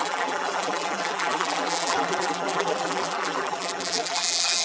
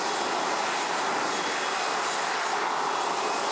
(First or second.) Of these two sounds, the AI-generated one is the first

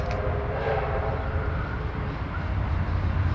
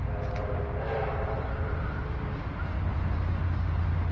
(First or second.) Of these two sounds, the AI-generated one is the first